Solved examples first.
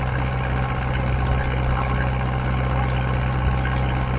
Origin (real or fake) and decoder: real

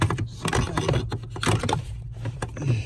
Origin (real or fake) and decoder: real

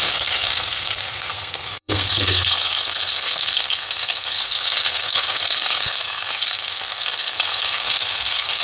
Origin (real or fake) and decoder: fake, codec, SNAC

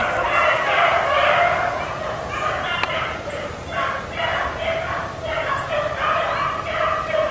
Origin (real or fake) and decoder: real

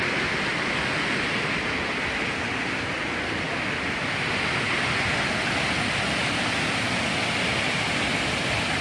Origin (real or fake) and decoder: real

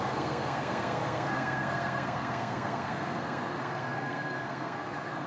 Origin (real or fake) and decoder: fake, codec, SNAC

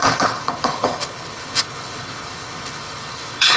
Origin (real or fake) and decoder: fake, codec, HILCodec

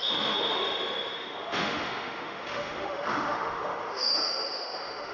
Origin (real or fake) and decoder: fake, autoencoder, DAC-VAE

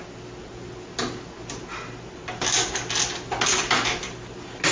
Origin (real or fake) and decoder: real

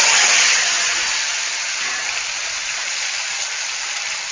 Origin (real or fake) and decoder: real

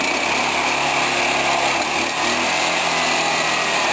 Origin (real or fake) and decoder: real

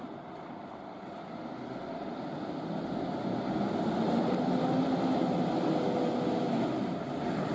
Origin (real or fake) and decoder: real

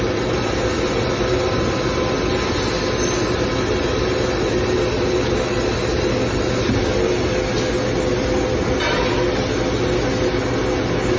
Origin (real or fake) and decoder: real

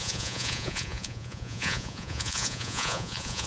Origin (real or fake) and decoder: fake, vocoder, Vocos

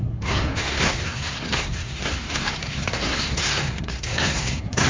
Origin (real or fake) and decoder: fake, codec, SNAC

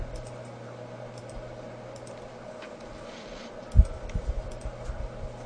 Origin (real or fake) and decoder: real